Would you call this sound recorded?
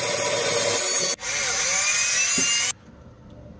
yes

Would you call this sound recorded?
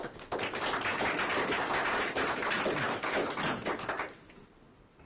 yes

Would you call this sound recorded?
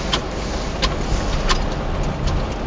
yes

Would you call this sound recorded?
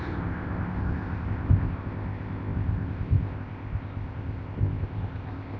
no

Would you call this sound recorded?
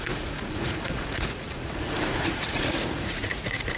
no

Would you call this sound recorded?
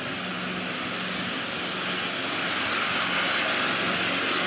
yes